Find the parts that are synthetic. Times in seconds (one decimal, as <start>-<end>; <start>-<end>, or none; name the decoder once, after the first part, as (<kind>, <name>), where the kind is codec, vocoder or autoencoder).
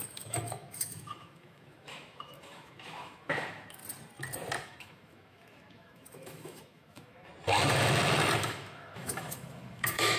0.0-3.8 (autoencoder, DAC-VAE); 4.6-7.3; 8.4-10.2